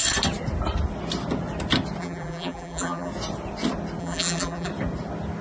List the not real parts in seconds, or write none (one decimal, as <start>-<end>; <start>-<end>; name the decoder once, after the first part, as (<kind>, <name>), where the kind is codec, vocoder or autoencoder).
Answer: 2.0-3.1 (vocoder, BigVGAN v2); 4.0-4.7